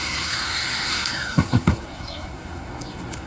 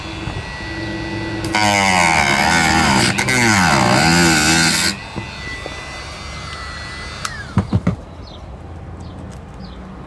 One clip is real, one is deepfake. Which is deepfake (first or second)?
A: first